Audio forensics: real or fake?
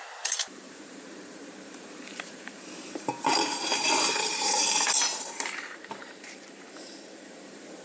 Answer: fake